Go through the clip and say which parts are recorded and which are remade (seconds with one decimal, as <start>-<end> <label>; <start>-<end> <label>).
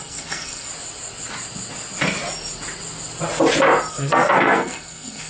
0.0-0.7 remade; 0.7-3.9 recorded; 3.9-5.3 remade